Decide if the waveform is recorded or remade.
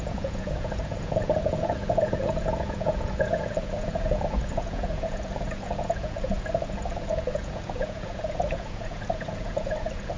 remade